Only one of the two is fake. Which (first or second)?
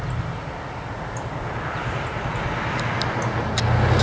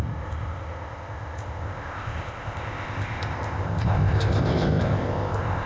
second